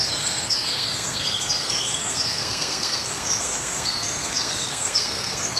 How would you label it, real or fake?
fake